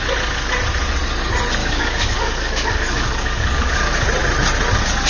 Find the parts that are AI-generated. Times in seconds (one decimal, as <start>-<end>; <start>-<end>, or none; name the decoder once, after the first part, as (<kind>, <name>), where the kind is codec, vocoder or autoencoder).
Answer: 1.6-3.8 (codec, DAC)